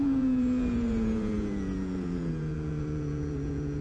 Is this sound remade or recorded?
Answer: remade